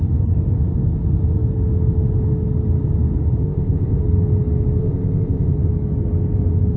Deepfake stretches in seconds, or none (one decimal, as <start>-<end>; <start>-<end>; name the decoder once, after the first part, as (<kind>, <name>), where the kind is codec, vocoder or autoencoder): 3.4-4.0 (codec, ZipCodec); 4.8-5.5